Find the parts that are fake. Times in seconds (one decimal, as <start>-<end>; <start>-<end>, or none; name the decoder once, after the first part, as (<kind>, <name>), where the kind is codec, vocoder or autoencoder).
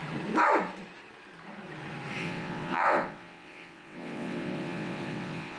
2.2-5.6 (vocoder, WaveNeXt)